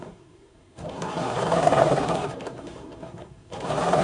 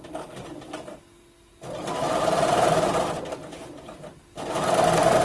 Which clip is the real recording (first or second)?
second